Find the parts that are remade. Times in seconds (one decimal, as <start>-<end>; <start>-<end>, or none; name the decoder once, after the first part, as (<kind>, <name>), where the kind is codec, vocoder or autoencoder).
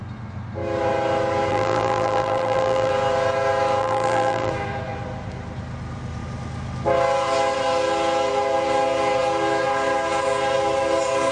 1.5-2.9 (vocoder, BigVGAN v2); 3.8-4.5